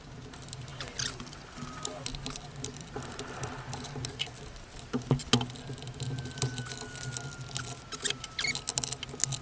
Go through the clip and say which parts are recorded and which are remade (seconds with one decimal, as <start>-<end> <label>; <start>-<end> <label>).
0.0-9.4 recorded